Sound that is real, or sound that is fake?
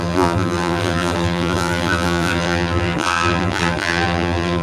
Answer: fake